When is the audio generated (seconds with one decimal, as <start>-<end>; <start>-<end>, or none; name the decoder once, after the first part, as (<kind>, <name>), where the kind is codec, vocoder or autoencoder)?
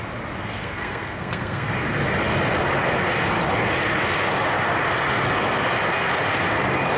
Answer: 0.6-1.7 (codec, SNAC)